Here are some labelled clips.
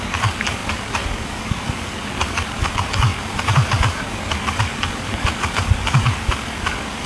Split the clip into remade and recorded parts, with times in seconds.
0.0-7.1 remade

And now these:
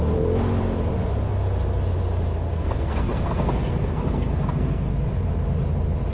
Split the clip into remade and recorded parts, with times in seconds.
0.0-2.5 recorded; 2.5-4.9 remade; 4.9-6.1 recorded

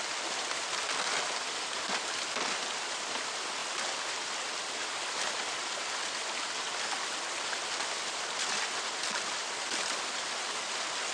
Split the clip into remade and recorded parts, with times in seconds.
0.0-11.1 recorded

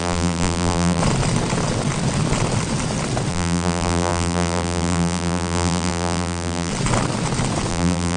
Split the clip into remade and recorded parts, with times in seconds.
0.0-1.0 remade; 1.0-3.3 recorded; 3.3-6.7 remade; 6.7-7.7 recorded; 7.7-8.2 remade

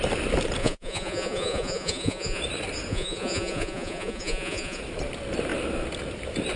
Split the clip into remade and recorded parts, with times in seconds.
0.0-0.6 recorded; 0.6-2.4 remade; 2.4-2.9 recorded; 2.9-4.8 remade; 4.8-6.6 recorded

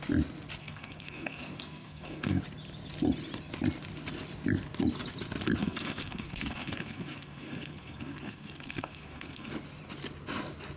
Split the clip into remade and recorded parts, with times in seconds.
0.0-0.6 recorded; 0.6-2.4 remade; 2.4-5.6 recorded; 5.6-9.5 remade; 9.5-10.8 recorded

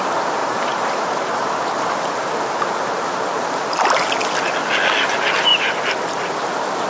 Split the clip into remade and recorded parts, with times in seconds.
0.0-0.4 recorded; 0.4-1.9 remade; 1.9-5.5 recorded; 5.5-6.3 remade; 6.3-6.9 recorded